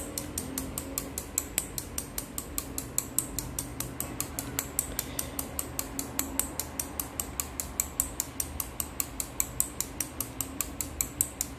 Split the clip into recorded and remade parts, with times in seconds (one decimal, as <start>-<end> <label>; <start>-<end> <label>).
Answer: 0.0-11.6 recorded

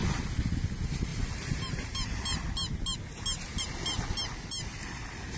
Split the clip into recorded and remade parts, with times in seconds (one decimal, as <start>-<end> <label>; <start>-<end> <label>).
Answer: 0.0-5.4 recorded

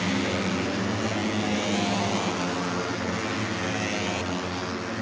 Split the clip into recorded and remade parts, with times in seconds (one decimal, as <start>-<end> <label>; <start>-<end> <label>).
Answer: 0.0-5.0 recorded

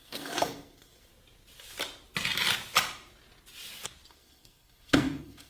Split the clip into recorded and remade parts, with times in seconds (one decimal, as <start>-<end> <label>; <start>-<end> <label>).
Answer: 0.0-1.1 remade; 1.1-4.1 recorded; 4.1-5.5 remade

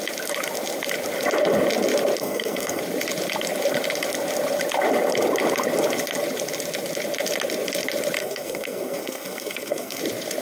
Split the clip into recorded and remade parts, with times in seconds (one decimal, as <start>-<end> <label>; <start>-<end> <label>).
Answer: 0.0-2.2 recorded; 2.2-2.8 remade; 2.8-8.2 recorded; 8.2-10.0 remade; 10.0-10.4 recorded

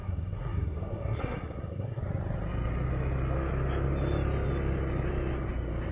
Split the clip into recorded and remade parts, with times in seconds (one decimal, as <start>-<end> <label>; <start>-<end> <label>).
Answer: 0.0-2.0 remade; 2.0-5.9 recorded